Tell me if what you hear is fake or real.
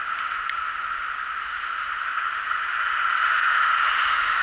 real